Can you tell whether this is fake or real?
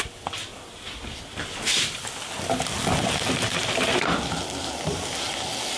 real